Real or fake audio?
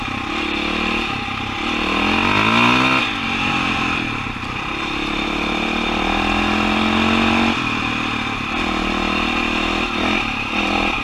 real